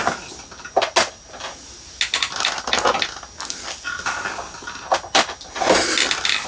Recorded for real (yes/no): yes